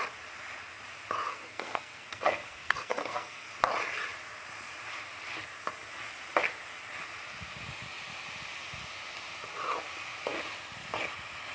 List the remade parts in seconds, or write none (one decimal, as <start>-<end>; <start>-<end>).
1.3-3.5